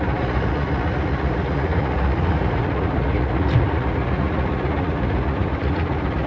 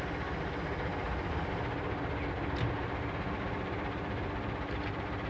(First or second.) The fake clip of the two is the first